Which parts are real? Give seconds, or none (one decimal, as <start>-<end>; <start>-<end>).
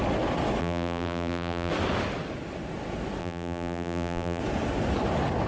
0.0-0.6; 1.7-3.2; 4.4-5.5